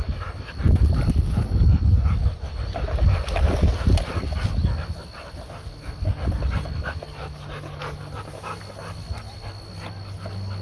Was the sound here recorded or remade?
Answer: recorded